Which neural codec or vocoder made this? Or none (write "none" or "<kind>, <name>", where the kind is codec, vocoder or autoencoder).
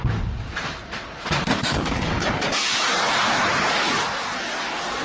none